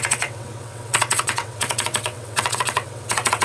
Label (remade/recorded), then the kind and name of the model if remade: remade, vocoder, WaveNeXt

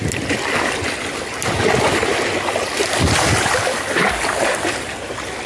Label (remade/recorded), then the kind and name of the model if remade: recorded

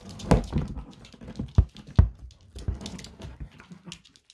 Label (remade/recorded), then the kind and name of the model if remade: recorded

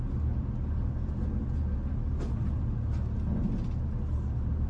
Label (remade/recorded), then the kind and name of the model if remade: recorded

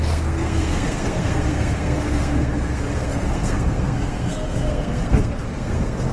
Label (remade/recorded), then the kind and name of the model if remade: remade, codec, SNAC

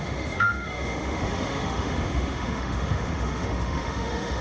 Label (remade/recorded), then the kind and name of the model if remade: remade, autoencoder, DAC-VAE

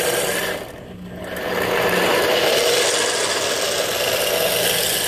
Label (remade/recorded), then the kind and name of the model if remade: recorded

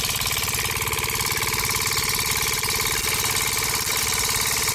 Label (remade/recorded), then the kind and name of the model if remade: recorded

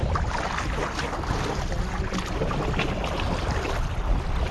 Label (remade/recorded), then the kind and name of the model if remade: recorded